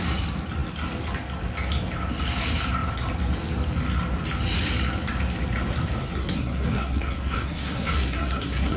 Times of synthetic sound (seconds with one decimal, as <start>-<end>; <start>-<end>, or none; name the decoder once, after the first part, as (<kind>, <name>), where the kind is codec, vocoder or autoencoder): 6.0-8.8 (codec, SNAC)